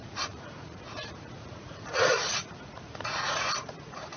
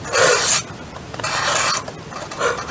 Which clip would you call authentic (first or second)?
second